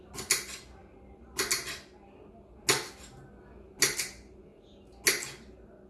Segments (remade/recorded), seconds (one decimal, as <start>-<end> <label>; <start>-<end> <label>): 0.0-5.9 recorded

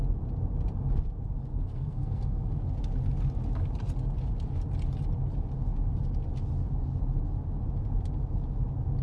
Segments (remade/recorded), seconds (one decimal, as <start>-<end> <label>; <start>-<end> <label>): 0.0-1.5 recorded; 1.5-2.5 remade; 2.5-9.0 recorded